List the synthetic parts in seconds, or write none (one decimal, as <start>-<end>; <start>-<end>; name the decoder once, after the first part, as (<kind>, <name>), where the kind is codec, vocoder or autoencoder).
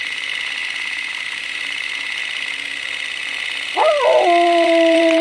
0.0-2.2 (vocoder, BigVGAN v2); 4.0-5.2